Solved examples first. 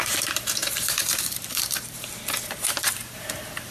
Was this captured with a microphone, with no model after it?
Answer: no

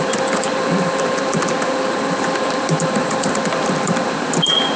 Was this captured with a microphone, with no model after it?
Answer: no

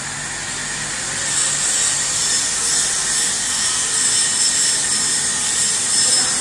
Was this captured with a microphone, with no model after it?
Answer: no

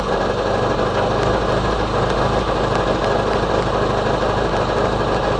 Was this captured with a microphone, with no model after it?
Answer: yes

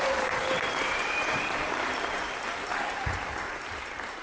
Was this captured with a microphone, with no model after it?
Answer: no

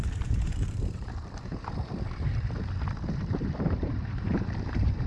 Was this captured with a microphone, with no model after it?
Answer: no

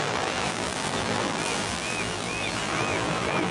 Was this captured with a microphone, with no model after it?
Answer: no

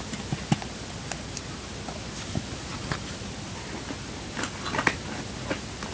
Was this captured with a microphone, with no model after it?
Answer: yes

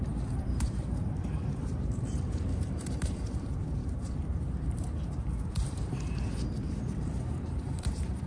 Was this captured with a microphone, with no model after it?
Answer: no